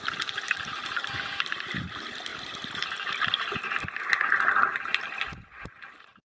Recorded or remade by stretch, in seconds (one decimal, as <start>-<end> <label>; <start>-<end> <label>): 0.0-2.3 recorded; 2.3-2.9 remade; 2.9-4.1 recorded; 4.1-5.7 remade; 5.7-6.2 recorded